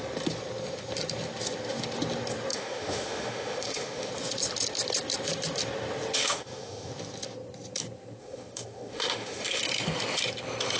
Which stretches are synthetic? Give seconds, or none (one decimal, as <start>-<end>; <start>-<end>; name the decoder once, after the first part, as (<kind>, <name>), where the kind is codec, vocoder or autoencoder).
2.5-4.1 (autoencoder, DAC-VAE); 6.2-6.9; 8.2-9.6